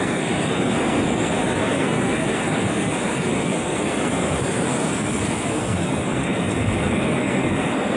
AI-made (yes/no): yes